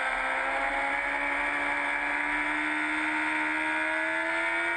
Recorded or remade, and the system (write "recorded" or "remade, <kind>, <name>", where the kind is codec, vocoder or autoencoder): recorded